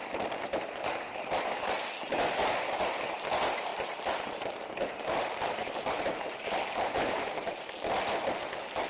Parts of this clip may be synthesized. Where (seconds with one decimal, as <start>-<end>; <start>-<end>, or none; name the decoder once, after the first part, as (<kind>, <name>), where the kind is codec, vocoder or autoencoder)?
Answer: 0.0-1.4 (vocoder, BigVGAN v2); 2.1-2.8; 3.7-7.7